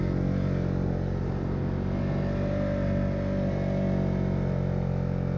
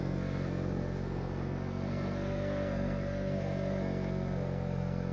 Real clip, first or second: first